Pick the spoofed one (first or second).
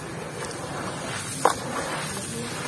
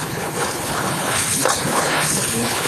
second